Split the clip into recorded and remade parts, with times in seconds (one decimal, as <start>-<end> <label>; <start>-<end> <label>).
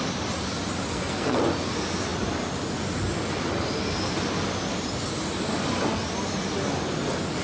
0.0-0.9 recorded; 0.9-1.4 remade; 1.4-7.4 recorded